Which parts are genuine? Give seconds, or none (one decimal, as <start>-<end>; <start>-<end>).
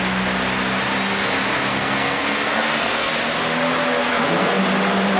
0.0-1.7; 3.1-4.1; 4.6-5.2